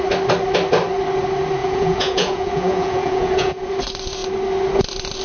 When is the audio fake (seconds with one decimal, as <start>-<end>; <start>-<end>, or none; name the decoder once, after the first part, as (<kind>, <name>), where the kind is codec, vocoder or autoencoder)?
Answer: 1.6-3.7 (vocoder, Vocos)